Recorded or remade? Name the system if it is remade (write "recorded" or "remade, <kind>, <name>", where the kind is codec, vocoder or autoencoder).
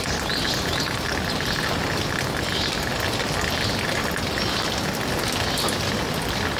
recorded